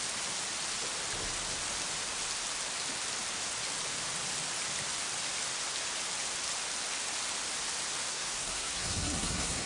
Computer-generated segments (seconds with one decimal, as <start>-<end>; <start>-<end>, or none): 8.1-9.7